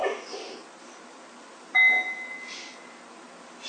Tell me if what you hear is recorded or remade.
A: recorded